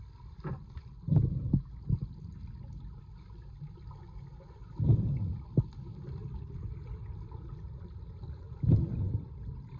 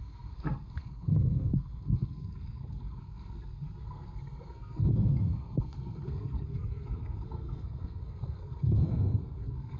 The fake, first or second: second